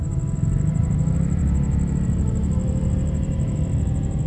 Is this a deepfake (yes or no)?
no